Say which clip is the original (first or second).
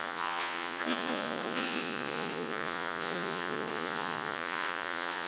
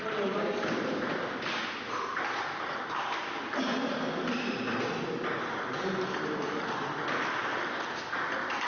second